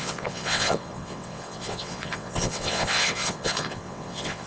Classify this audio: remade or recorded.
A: remade